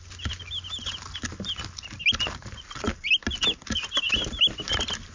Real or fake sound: real